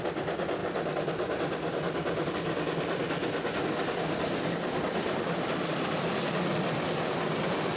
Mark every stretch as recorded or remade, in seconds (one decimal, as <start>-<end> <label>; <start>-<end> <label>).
0.0-7.8 recorded